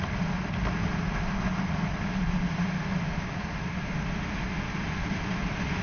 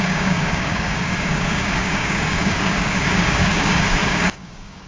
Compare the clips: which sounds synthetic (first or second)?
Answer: second